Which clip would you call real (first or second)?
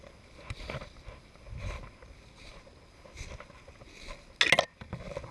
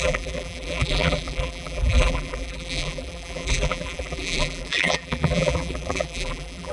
first